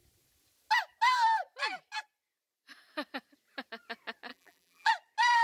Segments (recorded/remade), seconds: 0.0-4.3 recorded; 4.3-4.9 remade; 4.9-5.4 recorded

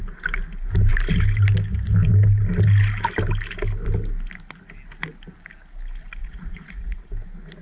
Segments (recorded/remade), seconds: 0.0-6.2 recorded; 6.2-7.1 remade; 7.1-7.6 recorded

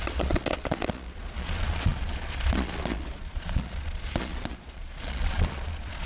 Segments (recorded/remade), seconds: 0.0-6.0 remade